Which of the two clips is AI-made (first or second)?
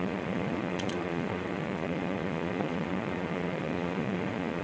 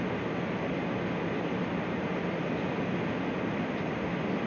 first